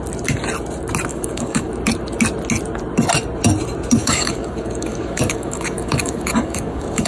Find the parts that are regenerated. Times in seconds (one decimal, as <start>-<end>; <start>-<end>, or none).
1.1-1.7; 4.0-7.1